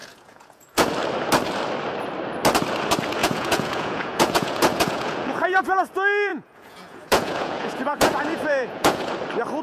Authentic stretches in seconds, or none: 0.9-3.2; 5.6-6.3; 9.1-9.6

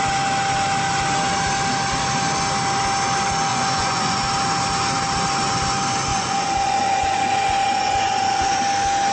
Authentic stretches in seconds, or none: 0.0-3.5; 4.2-6.1; 8.6-9.1

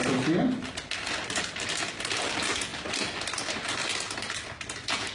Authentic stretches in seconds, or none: 0.0-5.1

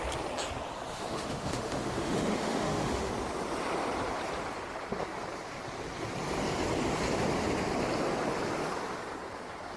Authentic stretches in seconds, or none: 0.0-0.9; 3.1-9.8

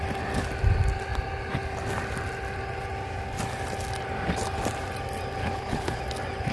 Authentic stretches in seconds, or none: 0.0-5.4; 6.0-6.5

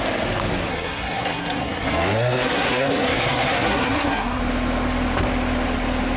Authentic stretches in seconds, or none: 0.0-0.7; 4.4-6.2